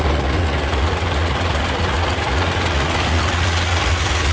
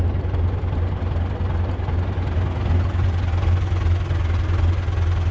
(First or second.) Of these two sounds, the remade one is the first